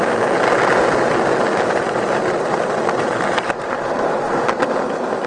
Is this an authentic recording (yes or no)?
yes